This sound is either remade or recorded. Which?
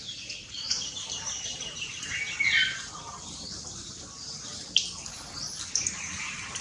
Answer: remade